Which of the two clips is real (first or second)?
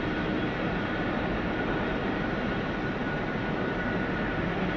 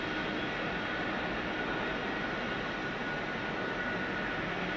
second